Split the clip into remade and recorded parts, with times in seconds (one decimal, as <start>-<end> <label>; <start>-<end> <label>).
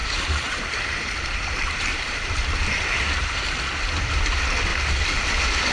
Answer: 0.0-3.4 remade; 3.4-5.7 recorded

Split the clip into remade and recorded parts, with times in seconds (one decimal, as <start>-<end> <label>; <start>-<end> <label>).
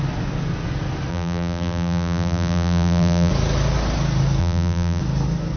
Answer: 0.0-1.1 recorded; 1.1-3.3 remade; 3.3-4.4 recorded; 4.4-5.0 remade; 5.0-5.6 recorded